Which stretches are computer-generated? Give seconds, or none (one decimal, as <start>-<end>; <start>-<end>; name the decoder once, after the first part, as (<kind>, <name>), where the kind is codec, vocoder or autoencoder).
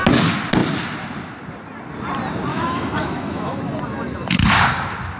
2.5-3.6 (autoencoder, DAC-VAE)